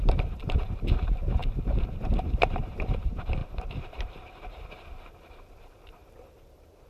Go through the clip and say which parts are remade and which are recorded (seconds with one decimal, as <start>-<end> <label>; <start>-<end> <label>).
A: 0.0-1.4 remade; 1.4-2.0 recorded; 2.0-6.9 remade